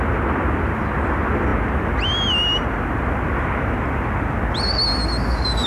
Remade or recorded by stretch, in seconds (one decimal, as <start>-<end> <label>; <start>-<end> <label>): 0.0-5.7 recorded